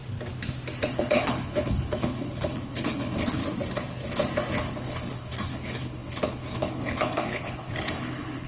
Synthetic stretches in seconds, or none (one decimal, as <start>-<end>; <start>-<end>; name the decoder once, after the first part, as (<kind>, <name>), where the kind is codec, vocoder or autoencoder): 0.9-3.4 (codec, HILCodec); 4.6-8.5